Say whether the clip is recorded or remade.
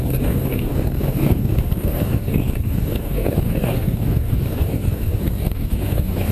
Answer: remade